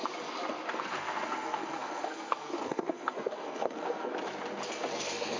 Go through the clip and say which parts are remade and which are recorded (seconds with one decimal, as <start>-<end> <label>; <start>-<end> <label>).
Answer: 0.0-0.8 recorded; 0.8-4.1 remade; 4.1-4.9 recorded; 4.9-5.4 remade